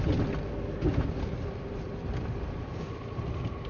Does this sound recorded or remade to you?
recorded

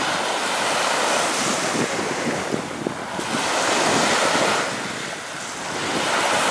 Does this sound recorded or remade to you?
recorded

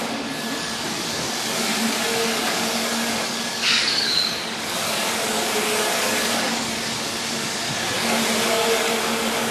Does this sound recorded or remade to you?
remade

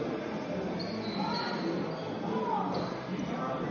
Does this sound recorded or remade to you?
recorded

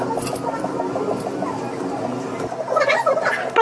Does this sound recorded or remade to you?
recorded